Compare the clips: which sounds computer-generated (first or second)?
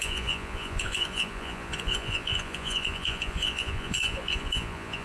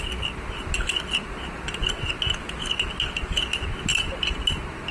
first